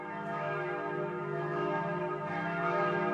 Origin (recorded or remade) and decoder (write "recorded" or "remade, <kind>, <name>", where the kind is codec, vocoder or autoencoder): remade, autoencoder, DAC-VAE